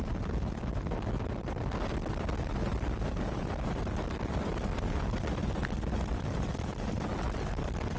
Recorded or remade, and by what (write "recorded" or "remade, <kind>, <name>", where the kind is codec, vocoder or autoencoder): recorded